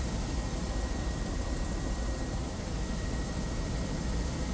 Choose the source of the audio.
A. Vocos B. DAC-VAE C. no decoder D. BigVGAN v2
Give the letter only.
D